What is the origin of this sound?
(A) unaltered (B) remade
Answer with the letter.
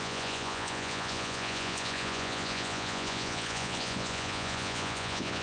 B